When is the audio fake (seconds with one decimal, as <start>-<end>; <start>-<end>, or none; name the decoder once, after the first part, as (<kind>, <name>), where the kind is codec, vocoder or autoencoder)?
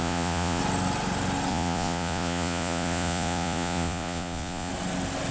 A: 0.0-0.6 (vocoder, Vocos); 1.5-4.7